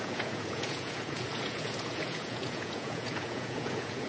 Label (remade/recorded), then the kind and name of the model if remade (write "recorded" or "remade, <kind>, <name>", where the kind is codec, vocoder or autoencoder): remade, vocoder, Vocos